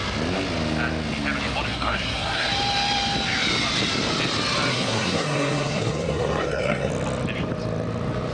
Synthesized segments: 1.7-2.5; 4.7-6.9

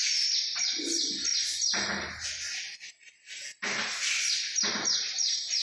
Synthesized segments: none

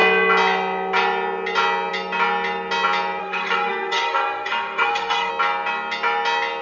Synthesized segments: 3.2-5.3

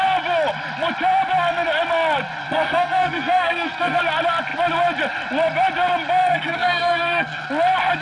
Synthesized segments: 2.4-4.0; 6.2-7.5

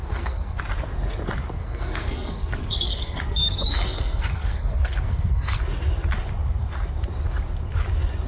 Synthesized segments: 0.0-0.6; 1.6-5.6

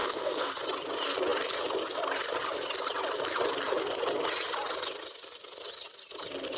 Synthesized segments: 0.0-0.5

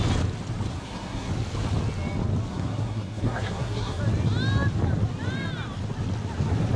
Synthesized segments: 0.7-1.3; 2.5-4.0